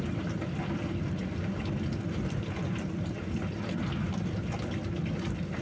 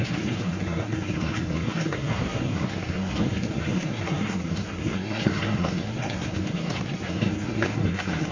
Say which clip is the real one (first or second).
first